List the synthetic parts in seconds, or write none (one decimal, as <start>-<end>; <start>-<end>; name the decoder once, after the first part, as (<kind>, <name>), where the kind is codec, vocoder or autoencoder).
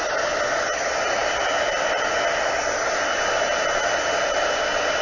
none